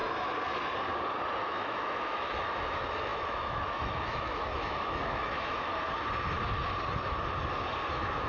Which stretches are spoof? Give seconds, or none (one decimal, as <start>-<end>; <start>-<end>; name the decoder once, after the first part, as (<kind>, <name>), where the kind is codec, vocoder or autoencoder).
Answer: 1.4-5.7 (autoencoder, DAC-VAE); 7.9-8.3